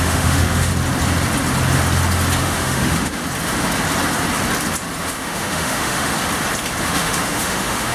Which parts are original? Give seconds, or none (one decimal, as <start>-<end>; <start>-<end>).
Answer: 0.7-2.4; 3.2-5.0; 6.1-6.8